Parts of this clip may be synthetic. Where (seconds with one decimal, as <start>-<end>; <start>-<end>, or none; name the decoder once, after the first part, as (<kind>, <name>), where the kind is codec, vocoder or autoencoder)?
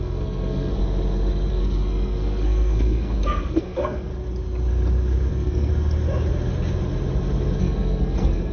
0.0-0.8 (codec, SNAC); 1.5-4.1; 5.3-5.7; 7.6-8.5